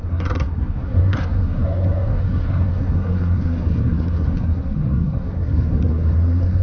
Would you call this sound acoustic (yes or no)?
no